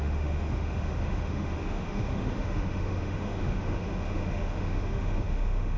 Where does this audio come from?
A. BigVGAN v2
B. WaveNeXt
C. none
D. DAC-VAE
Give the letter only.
D